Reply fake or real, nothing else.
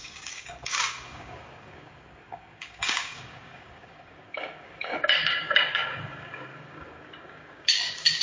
fake